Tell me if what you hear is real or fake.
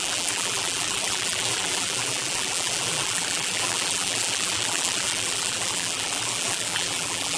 fake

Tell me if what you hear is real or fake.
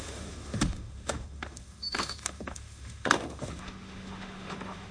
fake